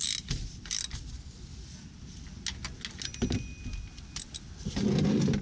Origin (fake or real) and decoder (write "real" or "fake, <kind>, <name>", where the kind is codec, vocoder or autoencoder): real